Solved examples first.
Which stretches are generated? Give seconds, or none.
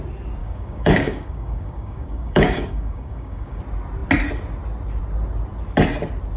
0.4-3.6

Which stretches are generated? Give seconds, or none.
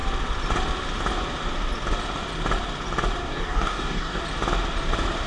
3.2-4.2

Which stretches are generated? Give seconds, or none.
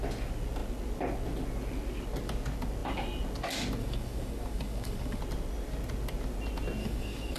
3.8-5.2; 6.8-7.4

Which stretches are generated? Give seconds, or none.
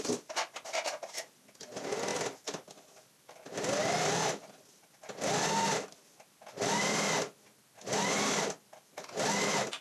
none